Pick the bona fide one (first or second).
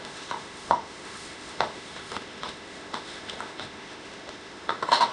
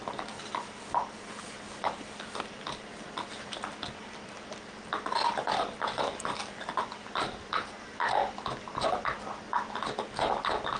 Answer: second